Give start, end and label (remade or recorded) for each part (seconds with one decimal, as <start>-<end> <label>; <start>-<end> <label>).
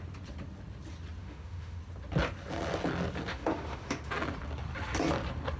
0.0-1.2 recorded; 1.2-1.8 remade; 1.8-3.3 recorded; 3.3-4.1 remade; 4.1-5.6 recorded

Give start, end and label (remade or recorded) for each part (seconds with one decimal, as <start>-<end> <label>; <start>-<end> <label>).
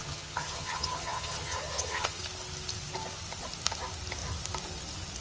0.0-2.2 remade; 2.2-5.2 recorded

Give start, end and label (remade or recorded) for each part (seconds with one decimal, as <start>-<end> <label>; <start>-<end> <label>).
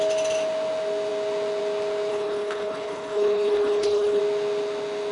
0.0-2.1 recorded; 2.1-4.2 remade; 4.2-5.1 recorded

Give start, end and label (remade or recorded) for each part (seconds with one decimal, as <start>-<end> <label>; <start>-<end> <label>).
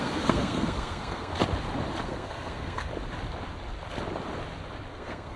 0.0-1.3 remade; 1.3-2.0 recorded; 2.0-2.9 remade; 2.9-4.9 recorded; 4.9-5.4 remade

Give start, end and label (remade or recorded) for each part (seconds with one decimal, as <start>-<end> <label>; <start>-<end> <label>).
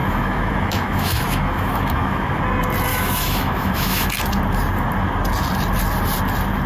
0.0-2.4 remade; 2.4-2.9 recorded; 2.9-4.1 remade; 4.1-6.7 recorded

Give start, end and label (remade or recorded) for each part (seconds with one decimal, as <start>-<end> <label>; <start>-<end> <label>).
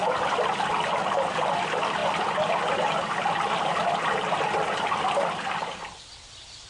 0.0-6.7 recorded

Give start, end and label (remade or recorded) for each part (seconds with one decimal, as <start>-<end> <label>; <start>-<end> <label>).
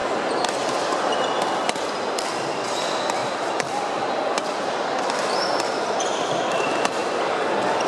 0.0-3.2 recorded; 3.2-6.4 remade; 6.4-7.0 recorded; 7.0-7.5 remade; 7.5-7.9 recorded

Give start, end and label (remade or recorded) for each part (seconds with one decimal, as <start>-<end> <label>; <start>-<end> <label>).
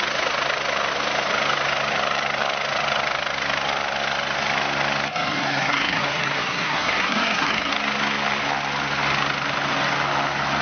0.0-5.1 recorded; 5.1-7.7 remade; 7.7-10.6 recorded